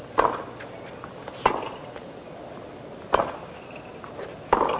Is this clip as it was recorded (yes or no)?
yes